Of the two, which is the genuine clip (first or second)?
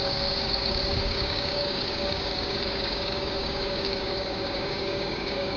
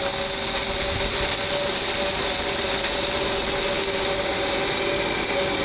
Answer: second